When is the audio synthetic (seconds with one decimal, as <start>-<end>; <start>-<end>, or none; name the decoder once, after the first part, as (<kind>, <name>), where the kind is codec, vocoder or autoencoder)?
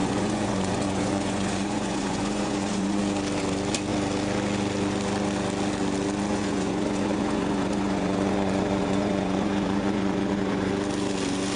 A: 0.0-3.0 (vocoder, Vocos); 6.3-10.7